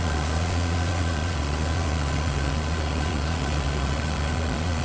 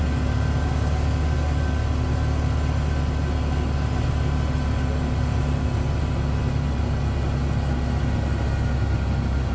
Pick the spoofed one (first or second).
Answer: first